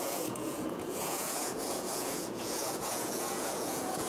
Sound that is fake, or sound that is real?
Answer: fake